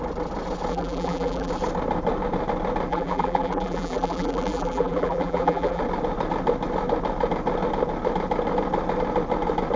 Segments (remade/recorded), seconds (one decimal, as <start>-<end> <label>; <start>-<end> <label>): 0.0-0.7 recorded; 0.7-1.5 remade; 1.5-2.9 recorded; 2.9-5.8 remade; 5.8-9.8 recorded